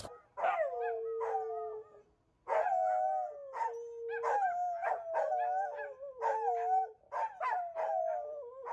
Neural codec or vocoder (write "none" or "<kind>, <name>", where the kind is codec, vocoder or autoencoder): none